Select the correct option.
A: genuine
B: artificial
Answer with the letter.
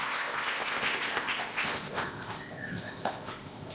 B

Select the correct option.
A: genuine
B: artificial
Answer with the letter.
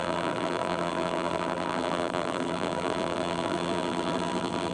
B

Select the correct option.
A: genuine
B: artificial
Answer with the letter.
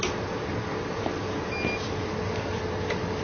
A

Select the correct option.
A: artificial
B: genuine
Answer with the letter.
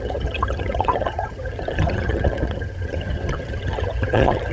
A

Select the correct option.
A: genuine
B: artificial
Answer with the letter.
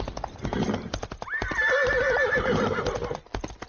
A